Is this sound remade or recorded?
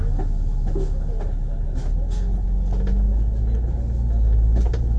recorded